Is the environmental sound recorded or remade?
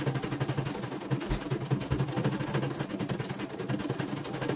recorded